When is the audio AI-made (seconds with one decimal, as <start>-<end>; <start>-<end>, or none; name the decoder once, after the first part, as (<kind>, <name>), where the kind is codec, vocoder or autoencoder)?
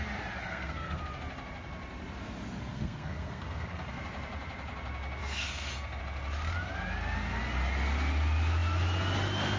0.4-1.0 (codec, SNAC); 2.7-4.0; 5.2-6.0